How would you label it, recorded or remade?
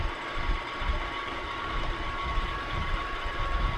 remade